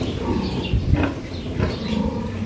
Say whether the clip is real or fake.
real